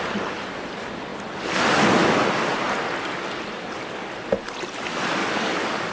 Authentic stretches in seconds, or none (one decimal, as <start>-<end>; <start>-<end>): 0.0-5.2